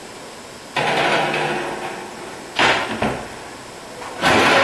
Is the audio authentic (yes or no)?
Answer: yes